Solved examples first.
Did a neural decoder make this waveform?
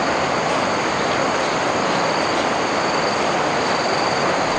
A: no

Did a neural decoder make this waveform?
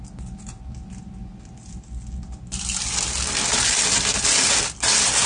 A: no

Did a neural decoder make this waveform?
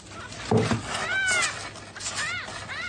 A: no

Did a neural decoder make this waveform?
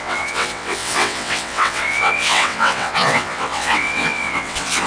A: yes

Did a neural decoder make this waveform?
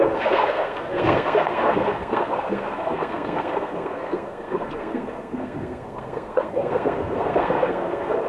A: yes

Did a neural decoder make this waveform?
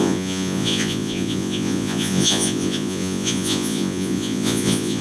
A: yes